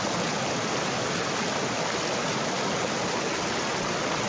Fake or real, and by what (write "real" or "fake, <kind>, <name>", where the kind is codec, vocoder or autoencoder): real